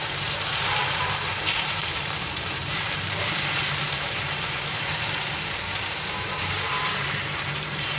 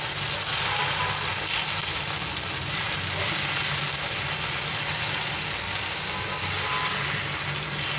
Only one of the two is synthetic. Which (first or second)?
first